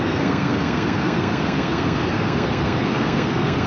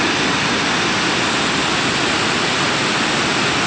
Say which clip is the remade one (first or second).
first